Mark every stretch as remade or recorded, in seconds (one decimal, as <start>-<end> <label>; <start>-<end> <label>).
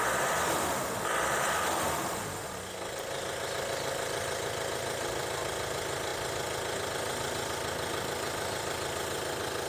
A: 0.0-9.7 recorded